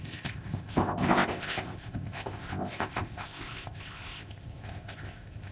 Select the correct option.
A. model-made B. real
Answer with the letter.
A